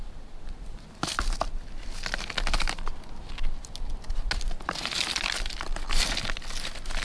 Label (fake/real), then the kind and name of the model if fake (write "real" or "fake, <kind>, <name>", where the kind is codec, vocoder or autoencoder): real